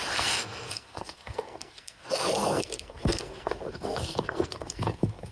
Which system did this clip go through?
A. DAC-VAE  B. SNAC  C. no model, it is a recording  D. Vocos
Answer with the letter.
B